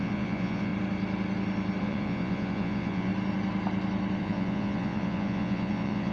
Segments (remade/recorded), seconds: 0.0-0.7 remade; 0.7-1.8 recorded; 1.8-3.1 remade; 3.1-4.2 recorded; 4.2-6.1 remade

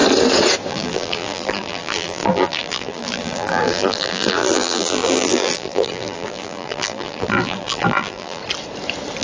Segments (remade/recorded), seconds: 0.0-0.7 recorded; 0.7-8.4 remade; 8.4-9.2 recorded

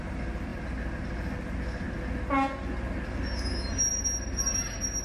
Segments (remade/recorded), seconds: 0.0-5.0 recorded

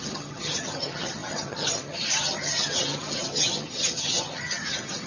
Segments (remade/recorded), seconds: 0.0-5.1 remade

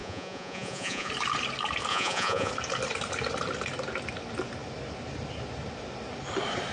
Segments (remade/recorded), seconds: 0.0-1.1 remade; 1.1-1.9 recorded; 1.9-2.5 remade; 2.5-6.7 recorded

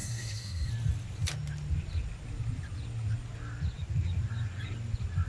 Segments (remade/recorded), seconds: 0.0-0.7 remade; 0.7-5.3 recorded